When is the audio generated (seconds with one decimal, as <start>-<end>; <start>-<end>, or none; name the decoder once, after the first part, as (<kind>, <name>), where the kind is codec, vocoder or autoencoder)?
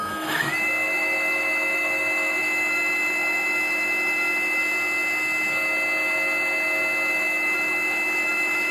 0.0-4.6 (autoencoder, DAC-VAE); 7.1-8.7